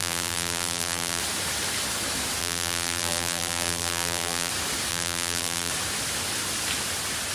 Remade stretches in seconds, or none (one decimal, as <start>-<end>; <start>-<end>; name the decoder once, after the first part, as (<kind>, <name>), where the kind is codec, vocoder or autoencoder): 0.0-1.2 (vocoder, BigVGAN v2); 2.4-4.5; 4.9-5.7